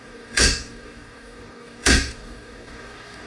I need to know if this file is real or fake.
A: fake